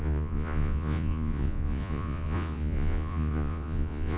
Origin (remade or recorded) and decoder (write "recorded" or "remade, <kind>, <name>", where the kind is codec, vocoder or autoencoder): remade, vocoder, Vocos